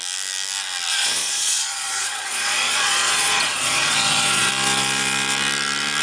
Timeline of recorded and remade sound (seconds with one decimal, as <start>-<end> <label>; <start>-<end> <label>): 0.0-0.9 recorded; 0.9-4.5 remade; 4.5-6.0 recorded